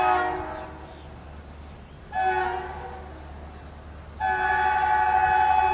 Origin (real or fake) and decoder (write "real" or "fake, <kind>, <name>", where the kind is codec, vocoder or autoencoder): real